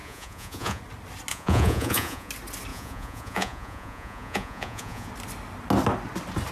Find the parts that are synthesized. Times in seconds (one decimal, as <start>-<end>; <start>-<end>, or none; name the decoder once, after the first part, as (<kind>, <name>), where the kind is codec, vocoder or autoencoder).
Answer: 0.0-0.8 (vocoder, Vocos); 1.3-2.3; 2.7-5.1

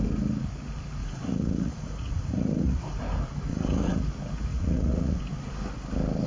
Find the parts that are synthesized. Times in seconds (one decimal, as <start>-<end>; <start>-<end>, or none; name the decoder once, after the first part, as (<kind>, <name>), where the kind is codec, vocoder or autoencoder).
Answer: 1.0-3.0 (vocoder, Vocos); 3.5-4.0; 4.5-5.2

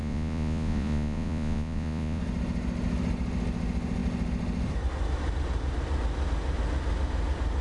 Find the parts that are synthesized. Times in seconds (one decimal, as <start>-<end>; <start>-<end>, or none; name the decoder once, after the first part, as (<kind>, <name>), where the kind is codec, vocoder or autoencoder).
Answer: 0.0-2.2 (vocoder, Vocos)

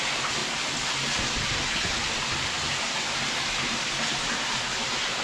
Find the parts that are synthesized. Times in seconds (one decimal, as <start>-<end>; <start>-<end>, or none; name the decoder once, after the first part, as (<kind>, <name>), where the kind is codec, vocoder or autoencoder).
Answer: none

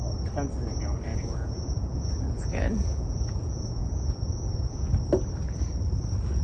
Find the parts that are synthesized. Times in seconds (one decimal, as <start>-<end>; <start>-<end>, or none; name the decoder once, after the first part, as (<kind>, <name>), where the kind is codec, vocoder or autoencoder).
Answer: 1.1-4.9 (vocoder, Vocos)

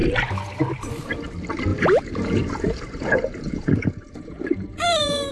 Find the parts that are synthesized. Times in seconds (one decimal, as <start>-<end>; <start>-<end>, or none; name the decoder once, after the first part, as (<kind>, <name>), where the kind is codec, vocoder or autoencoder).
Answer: 1.7-5.3 (vocoder, Vocos)